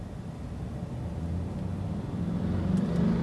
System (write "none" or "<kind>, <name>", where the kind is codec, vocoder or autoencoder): none